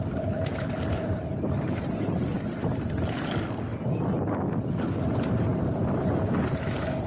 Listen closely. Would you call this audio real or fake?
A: real